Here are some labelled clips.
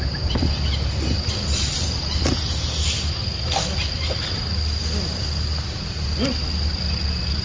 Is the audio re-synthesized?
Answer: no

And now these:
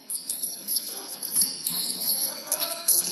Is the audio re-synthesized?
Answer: yes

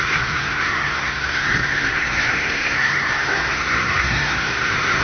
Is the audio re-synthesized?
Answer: yes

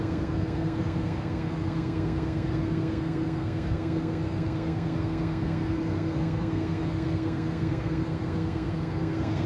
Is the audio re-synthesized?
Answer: yes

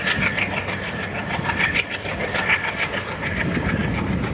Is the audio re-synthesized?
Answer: no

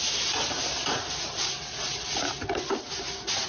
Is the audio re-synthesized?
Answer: no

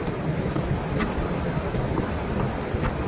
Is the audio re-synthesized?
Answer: no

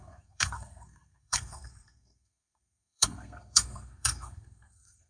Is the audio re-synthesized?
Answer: yes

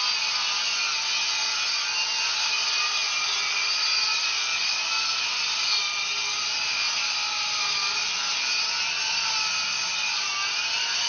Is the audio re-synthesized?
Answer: no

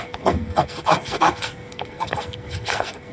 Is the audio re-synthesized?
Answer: yes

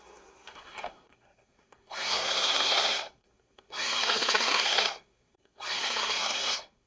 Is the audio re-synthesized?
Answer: yes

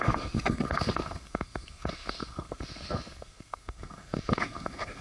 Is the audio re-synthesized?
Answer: yes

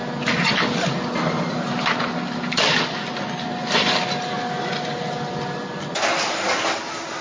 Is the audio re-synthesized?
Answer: no